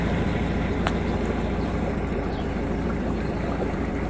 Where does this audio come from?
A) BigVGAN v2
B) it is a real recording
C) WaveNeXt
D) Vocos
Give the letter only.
A